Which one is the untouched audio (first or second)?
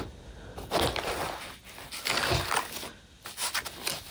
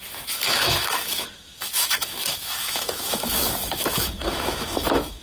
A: first